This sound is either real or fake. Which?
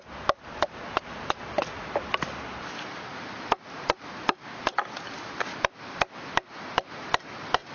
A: real